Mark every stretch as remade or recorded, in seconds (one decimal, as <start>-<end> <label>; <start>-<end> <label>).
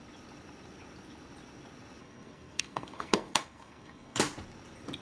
0.0-2.0 recorded; 2.0-4.2 remade; 4.2-5.0 recorded